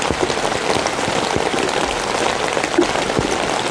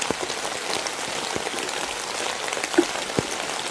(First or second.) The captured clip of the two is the second